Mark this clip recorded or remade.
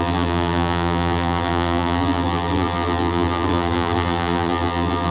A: remade